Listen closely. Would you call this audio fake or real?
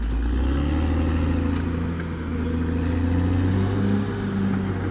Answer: real